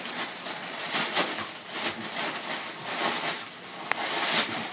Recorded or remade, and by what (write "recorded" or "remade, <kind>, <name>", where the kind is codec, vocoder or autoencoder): recorded